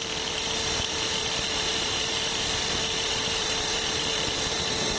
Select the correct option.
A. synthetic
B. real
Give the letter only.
A